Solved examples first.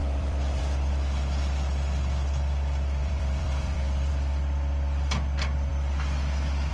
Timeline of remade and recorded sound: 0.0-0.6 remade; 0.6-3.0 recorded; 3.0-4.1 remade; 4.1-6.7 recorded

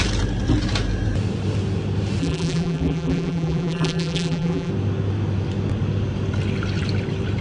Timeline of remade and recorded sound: 0.0-2.2 recorded; 2.2-4.7 remade; 4.7-7.4 recorded

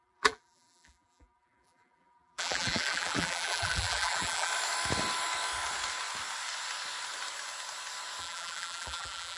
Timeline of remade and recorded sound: 0.0-4.5 remade; 4.5-8.2 recorded; 8.2-9.4 remade

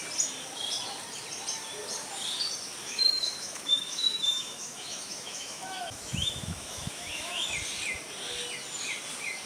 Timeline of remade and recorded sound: 0.0-2.8 recorded; 2.8-7.5 remade; 7.5-9.5 recorded

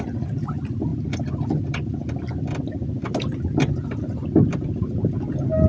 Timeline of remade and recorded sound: 0.0-5.7 recorded

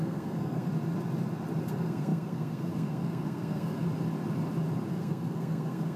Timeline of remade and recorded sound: 0.0-0.7 remade; 0.7-1.7 recorded; 1.7-3.9 remade; 3.9-4.9 recorded; 4.9-6.0 remade

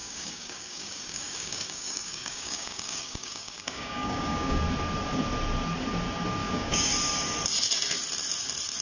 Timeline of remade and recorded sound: 0.0-4.6 remade; 4.6-6.4 recorded; 6.4-6.9 remade; 6.9-8.8 recorded

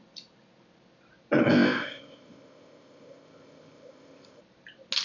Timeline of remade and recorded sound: 0.0-1.4 recorded; 1.4-4.4 remade; 4.4-5.0 recorded